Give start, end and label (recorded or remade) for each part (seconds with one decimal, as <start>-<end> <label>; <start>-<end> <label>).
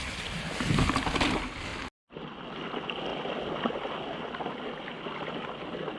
0.0-6.0 recorded